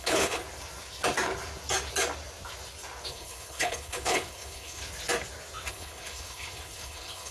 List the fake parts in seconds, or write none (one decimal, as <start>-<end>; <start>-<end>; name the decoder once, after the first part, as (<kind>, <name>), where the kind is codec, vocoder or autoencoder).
0.0-0.4 (codec, HILCodec); 3.1-4.8; 5.7-7.3